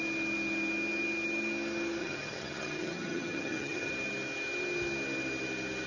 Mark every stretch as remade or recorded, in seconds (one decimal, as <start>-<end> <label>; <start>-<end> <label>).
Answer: 0.0-2.0 recorded; 2.0-3.9 remade; 3.9-5.9 recorded

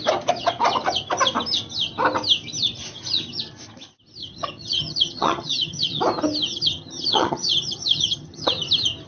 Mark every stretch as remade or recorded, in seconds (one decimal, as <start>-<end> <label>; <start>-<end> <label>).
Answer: 0.0-4.2 recorded; 4.2-6.0 remade; 6.0-6.5 recorded; 6.5-8.5 remade; 8.5-9.1 recorded